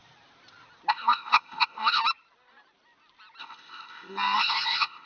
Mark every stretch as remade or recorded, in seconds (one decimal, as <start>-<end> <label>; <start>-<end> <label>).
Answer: 0.0-0.9 recorded; 0.9-2.0 remade; 2.0-3.4 recorded; 3.4-5.1 remade